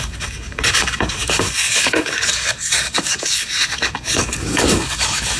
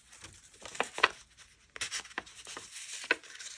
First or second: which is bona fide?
second